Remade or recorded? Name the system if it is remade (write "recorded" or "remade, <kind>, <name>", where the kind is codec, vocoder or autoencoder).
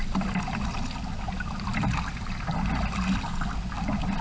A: recorded